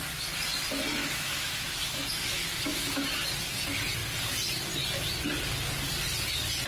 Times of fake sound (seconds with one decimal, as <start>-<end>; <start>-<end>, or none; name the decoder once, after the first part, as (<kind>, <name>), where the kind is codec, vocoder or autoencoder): 1.0-3.0 (autoencoder, DAC-VAE)